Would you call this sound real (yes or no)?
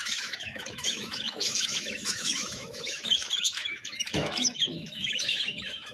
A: no